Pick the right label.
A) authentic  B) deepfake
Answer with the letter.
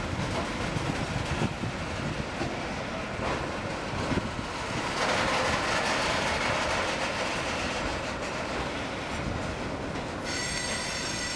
A